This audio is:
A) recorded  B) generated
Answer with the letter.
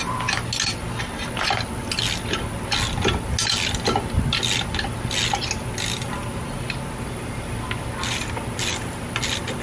A